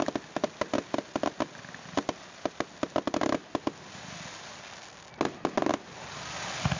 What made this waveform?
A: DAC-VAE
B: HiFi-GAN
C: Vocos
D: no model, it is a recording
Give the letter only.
D